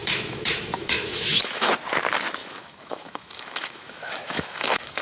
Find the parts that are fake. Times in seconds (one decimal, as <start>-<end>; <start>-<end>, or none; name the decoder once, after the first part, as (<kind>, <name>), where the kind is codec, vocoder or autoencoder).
0.0-1.7 (autoencoder, DAC-VAE); 2.4-5.0